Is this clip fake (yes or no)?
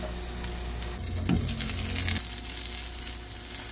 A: no